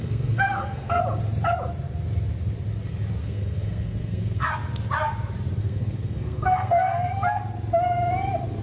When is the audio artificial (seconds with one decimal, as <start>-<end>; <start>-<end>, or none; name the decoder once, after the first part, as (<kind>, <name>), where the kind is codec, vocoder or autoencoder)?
0.0-1.0 (codec, SNAC); 3.2-4.5; 5.6-7.4